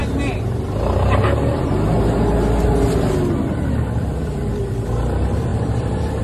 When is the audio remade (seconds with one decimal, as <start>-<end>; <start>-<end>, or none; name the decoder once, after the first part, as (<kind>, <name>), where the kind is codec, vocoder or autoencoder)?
3.7-6.2 (vocoder, BigVGAN v2)